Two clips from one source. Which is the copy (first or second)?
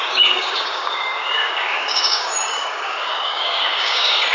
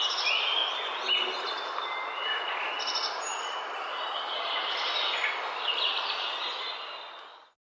first